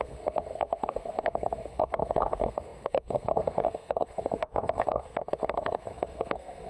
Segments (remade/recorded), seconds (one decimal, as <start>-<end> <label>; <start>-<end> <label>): 0.0-6.7 remade